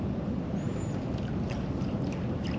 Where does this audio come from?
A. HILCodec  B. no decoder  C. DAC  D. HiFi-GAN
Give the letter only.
B